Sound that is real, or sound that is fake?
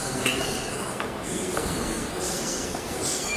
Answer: fake